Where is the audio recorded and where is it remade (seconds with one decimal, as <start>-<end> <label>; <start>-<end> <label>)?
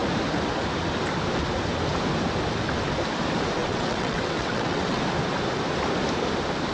0.0-3.6 recorded; 3.6-5.0 remade; 5.0-6.7 recorded